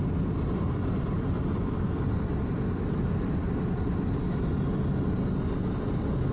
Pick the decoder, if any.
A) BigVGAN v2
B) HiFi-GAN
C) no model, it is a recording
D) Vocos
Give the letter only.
C